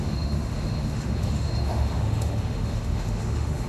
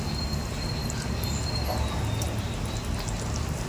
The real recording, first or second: second